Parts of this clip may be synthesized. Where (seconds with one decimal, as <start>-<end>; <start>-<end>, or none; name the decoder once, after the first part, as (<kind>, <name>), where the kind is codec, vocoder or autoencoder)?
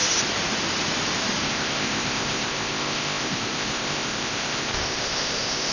1.4-5.7 (codec, ZipCodec)